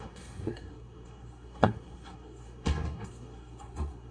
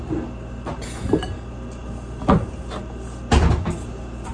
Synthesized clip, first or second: first